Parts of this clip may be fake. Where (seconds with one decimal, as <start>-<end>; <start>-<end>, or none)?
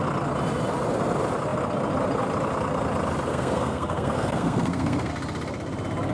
3.3-5.1